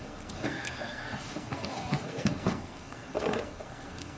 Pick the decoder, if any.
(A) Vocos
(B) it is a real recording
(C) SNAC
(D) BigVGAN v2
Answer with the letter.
C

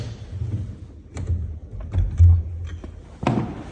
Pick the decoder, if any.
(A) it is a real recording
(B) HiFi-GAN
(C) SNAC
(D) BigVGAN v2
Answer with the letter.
A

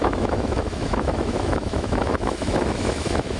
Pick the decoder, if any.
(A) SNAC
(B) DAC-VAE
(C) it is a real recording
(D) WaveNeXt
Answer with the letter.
B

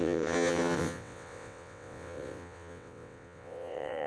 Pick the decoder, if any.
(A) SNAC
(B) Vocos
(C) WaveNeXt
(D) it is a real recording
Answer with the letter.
C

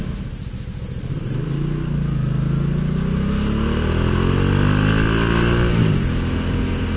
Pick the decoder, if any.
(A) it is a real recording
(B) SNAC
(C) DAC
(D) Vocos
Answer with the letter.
A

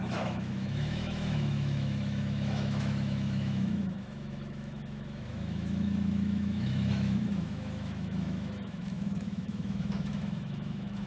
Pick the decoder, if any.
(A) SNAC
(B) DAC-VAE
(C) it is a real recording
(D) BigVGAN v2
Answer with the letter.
B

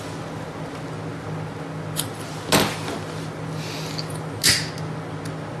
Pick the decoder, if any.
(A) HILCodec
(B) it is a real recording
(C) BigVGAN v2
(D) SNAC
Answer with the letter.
B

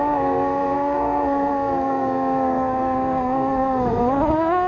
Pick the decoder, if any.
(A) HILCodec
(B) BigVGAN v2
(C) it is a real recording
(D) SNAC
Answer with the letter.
D